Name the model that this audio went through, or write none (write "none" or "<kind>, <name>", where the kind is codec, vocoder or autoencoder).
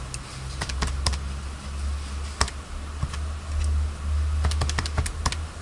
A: none